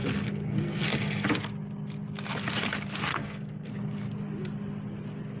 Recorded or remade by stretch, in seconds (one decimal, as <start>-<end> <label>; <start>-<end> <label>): 0.0-1.3 remade; 1.3-3.1 recorded; 3.1-3.7 remade; 3.7-5.4 recorded